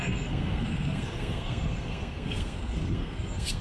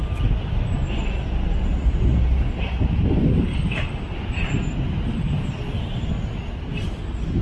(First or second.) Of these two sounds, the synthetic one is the first